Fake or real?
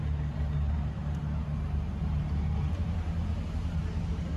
real